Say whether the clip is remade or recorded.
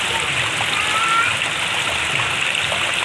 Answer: recorded